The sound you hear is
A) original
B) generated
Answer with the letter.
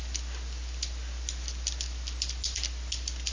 A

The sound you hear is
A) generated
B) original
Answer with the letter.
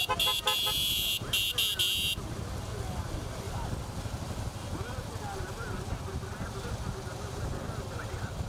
B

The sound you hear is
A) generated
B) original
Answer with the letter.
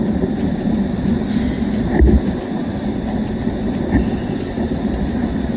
A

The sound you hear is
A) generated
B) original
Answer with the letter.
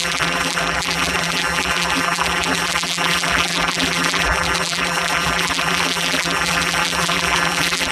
A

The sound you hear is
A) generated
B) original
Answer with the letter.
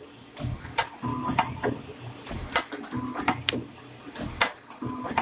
B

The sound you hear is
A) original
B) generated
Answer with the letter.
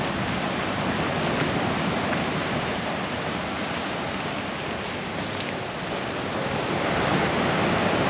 A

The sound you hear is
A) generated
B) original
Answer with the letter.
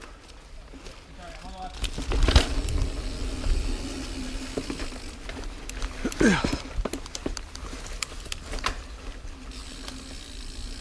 B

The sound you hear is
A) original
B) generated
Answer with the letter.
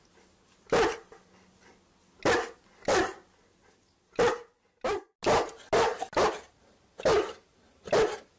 A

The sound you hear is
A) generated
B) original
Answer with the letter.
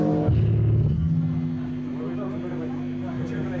B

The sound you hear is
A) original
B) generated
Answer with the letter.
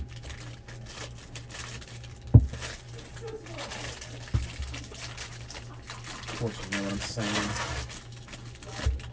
A